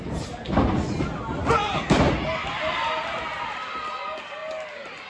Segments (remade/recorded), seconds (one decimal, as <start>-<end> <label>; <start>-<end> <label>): 0.0-5.1 recorded

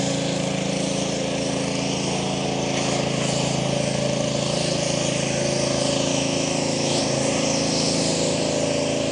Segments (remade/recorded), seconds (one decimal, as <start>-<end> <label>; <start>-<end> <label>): 0.0-6.1 recorded; 6.1-7.0 remade; 7.0-9.1 recorded